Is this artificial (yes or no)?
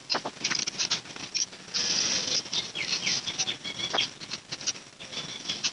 no